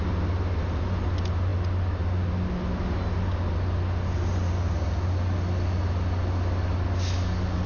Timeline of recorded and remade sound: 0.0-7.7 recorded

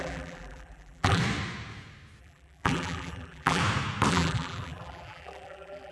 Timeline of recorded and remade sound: 0.0-1.2 remade; 1.2-2.2 recorded; 2.2-3.6 remade; 3.6-4.1 recorded; 4.1-5.9 remade